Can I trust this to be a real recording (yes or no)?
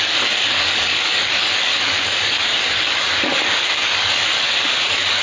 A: no